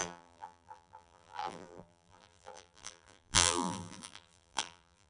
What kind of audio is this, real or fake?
fake